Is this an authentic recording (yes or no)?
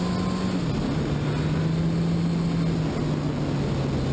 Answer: yes